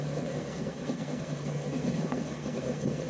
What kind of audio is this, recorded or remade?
remade